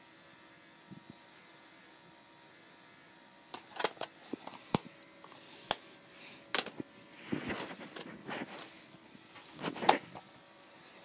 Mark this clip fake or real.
real